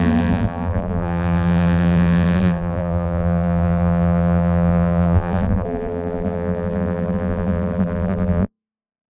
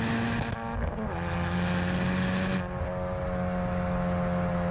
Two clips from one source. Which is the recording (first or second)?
second